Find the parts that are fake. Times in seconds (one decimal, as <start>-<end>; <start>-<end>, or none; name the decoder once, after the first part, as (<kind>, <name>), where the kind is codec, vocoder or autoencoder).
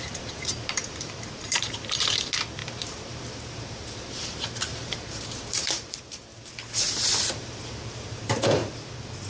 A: 0.0-6.3 (vocoder, BigVGAN v2); 7.3-8.6